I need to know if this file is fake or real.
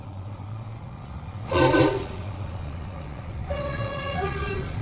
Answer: fake